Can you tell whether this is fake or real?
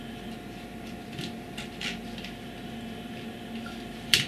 real